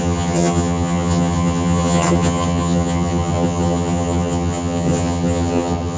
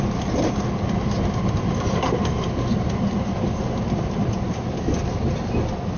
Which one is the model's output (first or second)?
first